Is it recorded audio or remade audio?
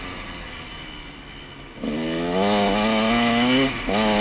recorded